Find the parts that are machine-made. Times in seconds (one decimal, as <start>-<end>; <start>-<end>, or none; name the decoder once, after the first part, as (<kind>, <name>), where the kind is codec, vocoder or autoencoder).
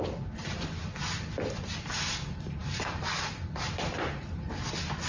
none